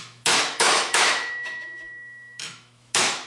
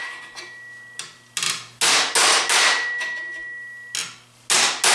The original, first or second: second